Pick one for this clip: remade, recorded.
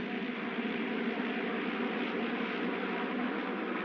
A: recorded